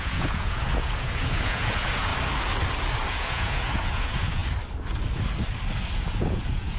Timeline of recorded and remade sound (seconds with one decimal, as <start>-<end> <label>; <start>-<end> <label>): 0.0-2.1 remade; 2.1-3.1 recorded; 3.1-4.4 remade; 4.4-6.0 recorded; 6.0-6.8 remade